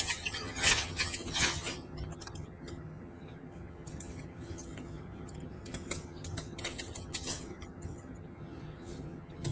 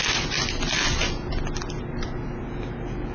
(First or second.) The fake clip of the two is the first